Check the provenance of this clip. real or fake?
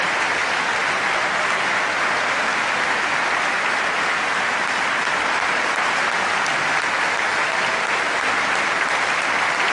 real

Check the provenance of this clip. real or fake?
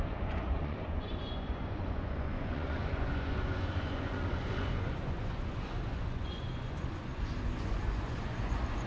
fake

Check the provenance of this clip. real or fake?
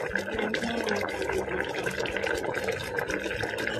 real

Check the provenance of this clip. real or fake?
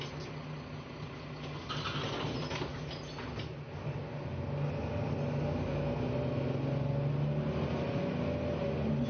real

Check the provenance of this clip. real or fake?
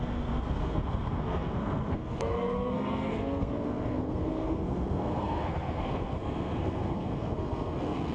fake